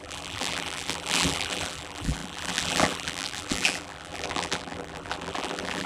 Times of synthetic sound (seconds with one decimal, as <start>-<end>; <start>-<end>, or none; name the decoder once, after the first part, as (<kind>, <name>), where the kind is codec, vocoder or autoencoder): 0.0-5.9 (vocoder, BigVGAN v2)